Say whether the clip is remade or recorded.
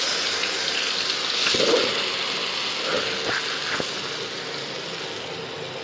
recorded